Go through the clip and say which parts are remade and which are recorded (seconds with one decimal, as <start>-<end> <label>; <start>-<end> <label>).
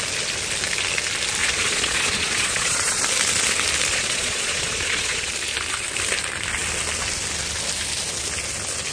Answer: 0.0-1.4 recorded; 1.4-3.0 remade; 3.0-3.9 recorded; 3.9-5.3 remade; 5.3-8.9 recorded